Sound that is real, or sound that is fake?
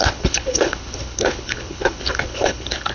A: fake